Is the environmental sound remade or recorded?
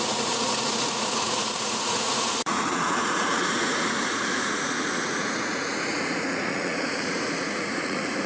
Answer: remade